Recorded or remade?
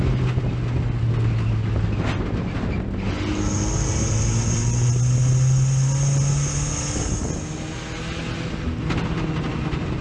recorded